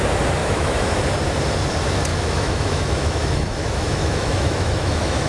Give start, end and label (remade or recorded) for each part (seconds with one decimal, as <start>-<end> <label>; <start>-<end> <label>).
0.0-0.4 recorded; 0.4-1.0 remade; 1.0-2.1 recorded; 2.1-5.3 remade